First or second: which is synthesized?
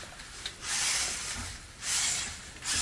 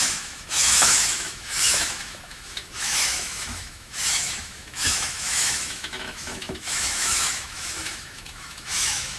second